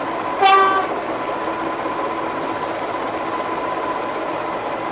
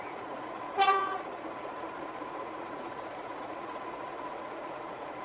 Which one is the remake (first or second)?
second